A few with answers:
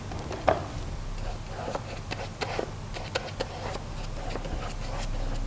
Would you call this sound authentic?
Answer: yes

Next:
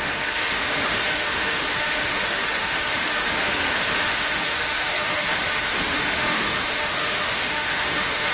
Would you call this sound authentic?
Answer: no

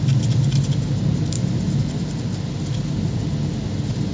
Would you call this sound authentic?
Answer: yes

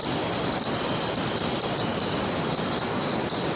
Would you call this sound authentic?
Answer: yes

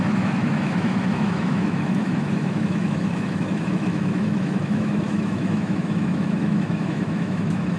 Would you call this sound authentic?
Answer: no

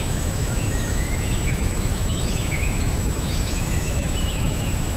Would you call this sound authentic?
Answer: no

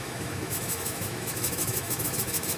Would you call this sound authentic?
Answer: no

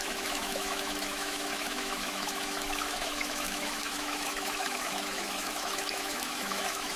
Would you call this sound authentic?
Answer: no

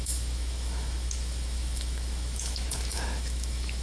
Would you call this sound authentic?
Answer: no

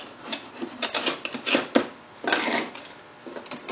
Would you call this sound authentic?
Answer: yes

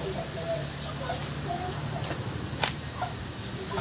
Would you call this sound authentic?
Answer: yes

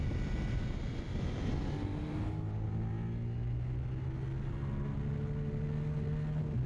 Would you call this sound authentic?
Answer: yes